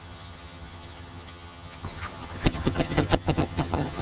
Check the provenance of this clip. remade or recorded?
remade